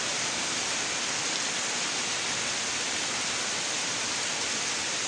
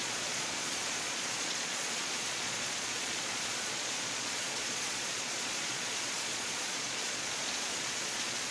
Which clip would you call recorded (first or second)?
first